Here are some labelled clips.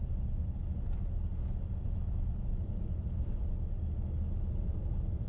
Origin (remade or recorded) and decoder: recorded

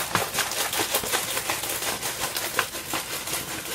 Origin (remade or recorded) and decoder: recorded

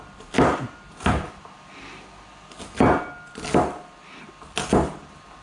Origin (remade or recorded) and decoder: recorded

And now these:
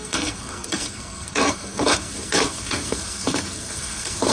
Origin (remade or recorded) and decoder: remade, codec, SNAC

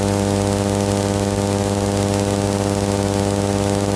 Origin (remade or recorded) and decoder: recorded